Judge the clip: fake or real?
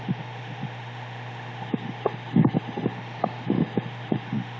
fake